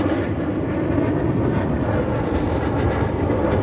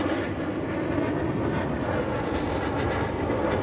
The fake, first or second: first